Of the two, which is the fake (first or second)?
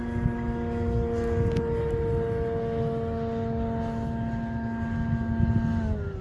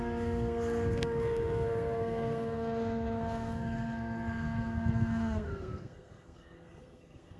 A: second